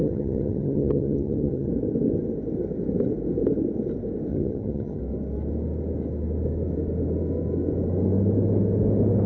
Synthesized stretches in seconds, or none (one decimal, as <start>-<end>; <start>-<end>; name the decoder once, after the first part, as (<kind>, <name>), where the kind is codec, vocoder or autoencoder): 0.0-1.7 (vocoder, HiFi-GAN); 4.3-5.0